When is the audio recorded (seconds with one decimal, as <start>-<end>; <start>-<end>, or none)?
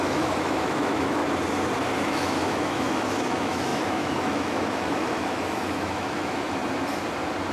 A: 1.2-2.0; 6.6-7.5